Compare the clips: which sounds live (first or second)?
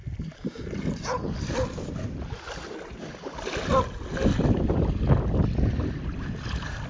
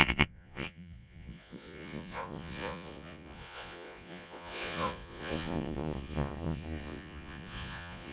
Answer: first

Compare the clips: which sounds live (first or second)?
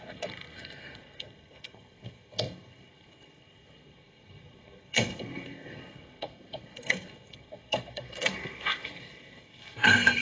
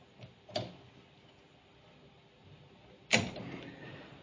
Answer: second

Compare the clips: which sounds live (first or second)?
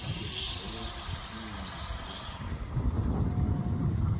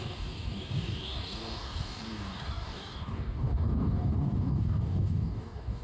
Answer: first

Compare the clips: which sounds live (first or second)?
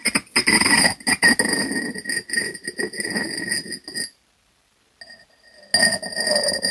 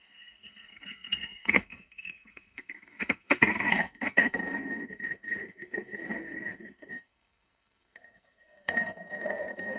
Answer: first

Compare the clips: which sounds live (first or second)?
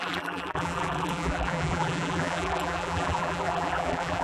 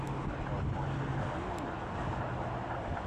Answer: second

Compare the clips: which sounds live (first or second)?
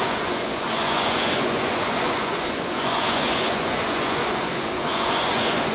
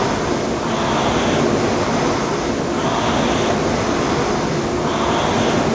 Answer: second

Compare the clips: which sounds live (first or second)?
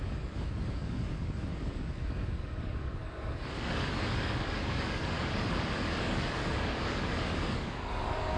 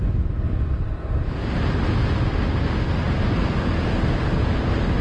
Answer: second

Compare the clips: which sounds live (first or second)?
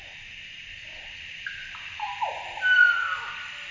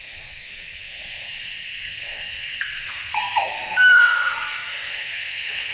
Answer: first